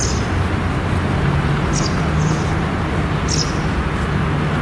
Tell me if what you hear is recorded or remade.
recorded